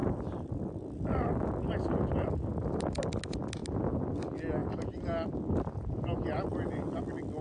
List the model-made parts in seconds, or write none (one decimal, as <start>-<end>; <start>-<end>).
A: 0.0-0.5; 2.5-3.0; 3.6-4.1; 4.6-7.0